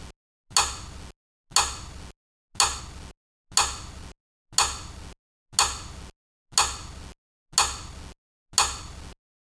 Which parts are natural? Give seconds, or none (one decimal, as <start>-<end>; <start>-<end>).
0.0-9.5